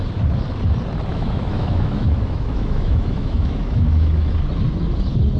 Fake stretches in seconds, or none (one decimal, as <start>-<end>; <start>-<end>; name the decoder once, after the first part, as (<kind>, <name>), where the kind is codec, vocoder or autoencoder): 1.1-4.3 (autoencoder, DAC-VAE)